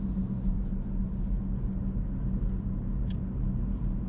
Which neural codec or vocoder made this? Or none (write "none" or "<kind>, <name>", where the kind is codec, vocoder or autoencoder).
none